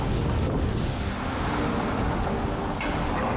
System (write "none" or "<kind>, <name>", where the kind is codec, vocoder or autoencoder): none